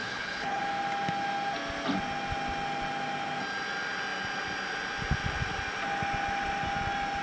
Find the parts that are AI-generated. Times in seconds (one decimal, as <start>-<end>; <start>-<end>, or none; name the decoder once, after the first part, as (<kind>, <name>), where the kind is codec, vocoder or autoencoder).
0.0-0.6 (codec, HILCodec)